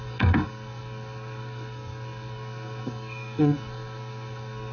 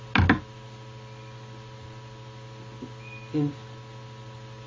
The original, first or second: second